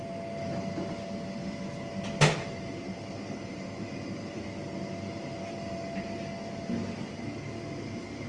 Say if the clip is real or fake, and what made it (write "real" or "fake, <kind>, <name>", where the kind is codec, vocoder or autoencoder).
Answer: real